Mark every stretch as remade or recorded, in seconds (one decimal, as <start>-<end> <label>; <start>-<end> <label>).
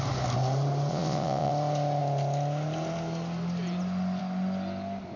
0.0-0.9 recorded; 0.9-1.5 remade; 1.5-5.2 recorded